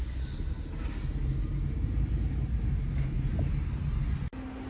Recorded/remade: recorded